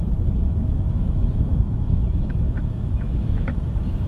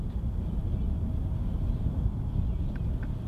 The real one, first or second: second